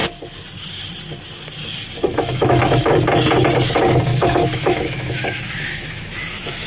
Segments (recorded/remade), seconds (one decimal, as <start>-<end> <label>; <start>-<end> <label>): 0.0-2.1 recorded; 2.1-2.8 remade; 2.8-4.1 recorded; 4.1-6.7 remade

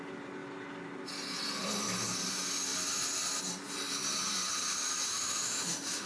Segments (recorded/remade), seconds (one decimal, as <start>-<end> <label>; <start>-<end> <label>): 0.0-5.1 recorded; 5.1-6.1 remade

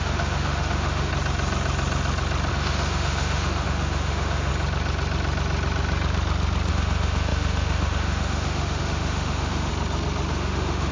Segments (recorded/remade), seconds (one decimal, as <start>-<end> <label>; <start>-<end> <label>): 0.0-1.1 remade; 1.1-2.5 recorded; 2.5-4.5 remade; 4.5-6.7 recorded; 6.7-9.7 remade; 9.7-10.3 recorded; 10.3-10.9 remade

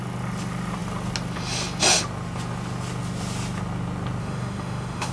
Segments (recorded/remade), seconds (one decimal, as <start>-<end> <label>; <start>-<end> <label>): 0.0-4.2 recorded; 4.2-5.1 remade

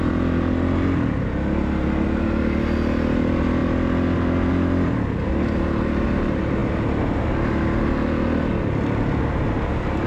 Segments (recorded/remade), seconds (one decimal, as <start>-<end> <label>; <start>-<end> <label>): 0.0-10.1 recorded